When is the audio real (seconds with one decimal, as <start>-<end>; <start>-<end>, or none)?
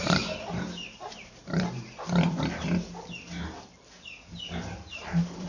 1.4-4.7